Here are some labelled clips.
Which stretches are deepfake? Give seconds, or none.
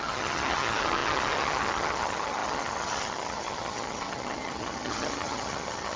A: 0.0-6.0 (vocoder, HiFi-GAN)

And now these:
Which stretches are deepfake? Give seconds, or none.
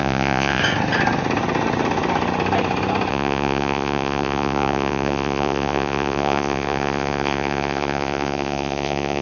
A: 0.0-0.6 (vocoder, Vocos); 3.1-9.2